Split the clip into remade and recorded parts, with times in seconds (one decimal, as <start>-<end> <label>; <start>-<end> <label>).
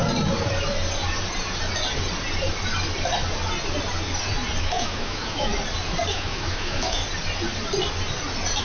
0.0-4.6 recorded; 4.6-5.5 remade; 5.5-6.1 recorded; 6.1-7.0 remade; 7.0-8.6 recorded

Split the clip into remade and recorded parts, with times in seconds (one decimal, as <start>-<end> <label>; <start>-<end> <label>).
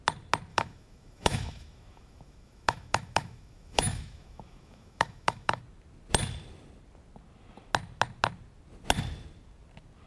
0.0-0.5 recorded; 0.5-5.6 remade; 5.6-10.1 recorded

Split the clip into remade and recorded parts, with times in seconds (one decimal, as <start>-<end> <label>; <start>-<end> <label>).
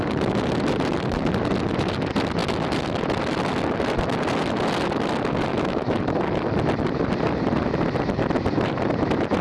0.0-5.5 recorded; 5.5-6.0 remade; 6.0-9.4 recorded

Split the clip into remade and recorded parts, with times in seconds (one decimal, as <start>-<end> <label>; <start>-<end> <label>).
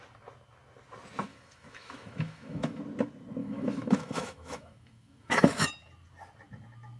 0.0-1.3 recorded; 1.3-2.8 remade; 2.8-3.4 recorded; 3.4-5.7 remade; 5.7-7.0 recorded